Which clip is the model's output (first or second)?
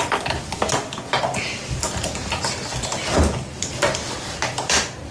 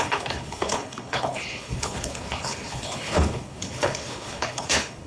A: second